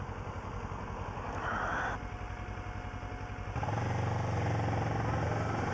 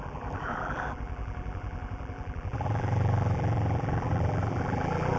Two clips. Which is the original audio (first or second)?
first